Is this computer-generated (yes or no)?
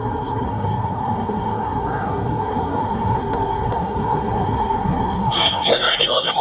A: yes